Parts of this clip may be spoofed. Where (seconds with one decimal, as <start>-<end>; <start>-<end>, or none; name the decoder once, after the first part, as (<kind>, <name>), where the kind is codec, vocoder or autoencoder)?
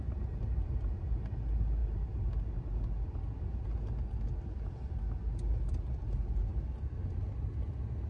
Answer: none